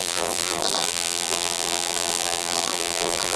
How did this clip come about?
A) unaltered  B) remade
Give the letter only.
B